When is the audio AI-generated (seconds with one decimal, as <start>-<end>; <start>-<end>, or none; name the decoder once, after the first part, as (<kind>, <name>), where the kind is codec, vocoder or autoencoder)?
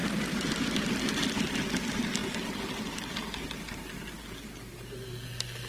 none